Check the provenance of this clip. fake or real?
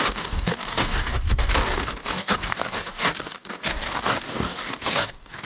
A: fake